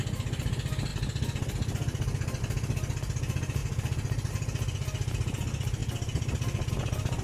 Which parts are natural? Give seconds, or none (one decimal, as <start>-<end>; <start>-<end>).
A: 0.0-7.2